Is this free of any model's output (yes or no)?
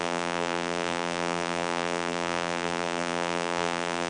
no